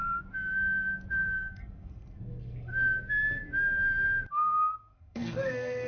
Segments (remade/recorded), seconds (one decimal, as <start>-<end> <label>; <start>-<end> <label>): 0.0-1.1 recorded; 1.1-2.7 remade; 2.7-4.3 recorded; 4.3-5.9 remade